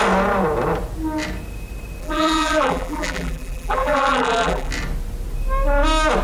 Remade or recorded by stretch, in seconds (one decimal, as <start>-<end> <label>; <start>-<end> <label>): 0.0-2.0 recorded; 2.0-4.7 remade; 4.7-6.2 recorded